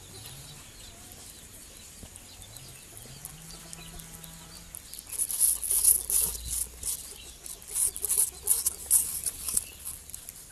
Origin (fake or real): real